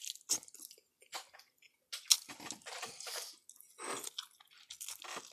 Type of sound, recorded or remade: recorded